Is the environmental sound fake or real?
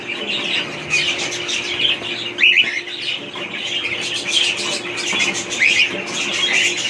real